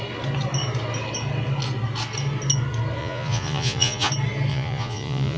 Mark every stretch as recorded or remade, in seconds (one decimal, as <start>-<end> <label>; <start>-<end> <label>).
0.0-3.0 recorded; 3.0-4.1 remade; 4.1-4.5 recorded; 4.5-5.4 remade